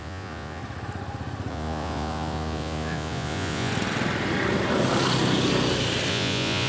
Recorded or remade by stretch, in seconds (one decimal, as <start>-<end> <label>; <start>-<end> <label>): 0.0-0.6 remade; 0.6-1.5 recorded; 1.5-3.7 remade; 3.7-6.1 recorded; 6.1-6.7 remade